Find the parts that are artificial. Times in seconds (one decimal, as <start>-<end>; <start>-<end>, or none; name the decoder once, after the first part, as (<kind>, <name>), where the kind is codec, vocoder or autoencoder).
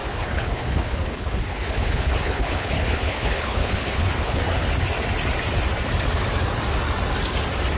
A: 0.0-4.4 (codec, HILCodec)